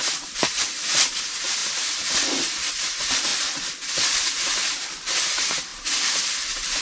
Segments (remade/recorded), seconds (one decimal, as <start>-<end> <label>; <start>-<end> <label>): 0.0-6.8 remade